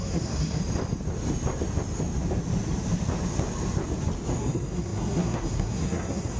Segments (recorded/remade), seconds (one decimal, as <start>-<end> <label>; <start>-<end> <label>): 0.0-0.6 remade; 0.6-4.4 recorded; 4.4-6.4 remade